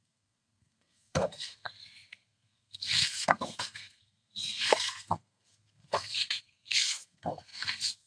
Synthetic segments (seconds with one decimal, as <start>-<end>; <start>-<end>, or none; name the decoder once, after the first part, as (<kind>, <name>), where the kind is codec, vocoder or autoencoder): 0.0-8.1 (codec, SNAC)